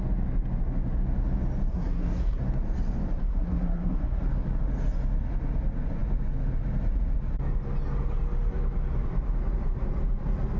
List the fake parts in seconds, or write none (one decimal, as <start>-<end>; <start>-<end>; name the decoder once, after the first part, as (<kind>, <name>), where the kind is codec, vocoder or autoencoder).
1.7-2.4 (codec, SNAC); 3.2-4.2